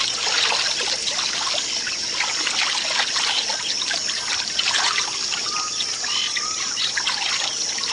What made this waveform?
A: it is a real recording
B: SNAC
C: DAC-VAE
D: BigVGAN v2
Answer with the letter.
A